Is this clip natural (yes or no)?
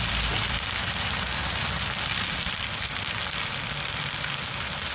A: no